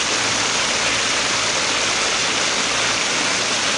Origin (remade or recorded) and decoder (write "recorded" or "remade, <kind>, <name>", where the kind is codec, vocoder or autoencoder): recorded